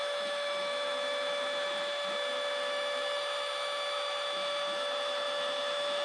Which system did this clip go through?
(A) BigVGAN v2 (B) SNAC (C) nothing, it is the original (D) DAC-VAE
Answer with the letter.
D